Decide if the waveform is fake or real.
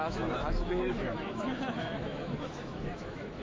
fake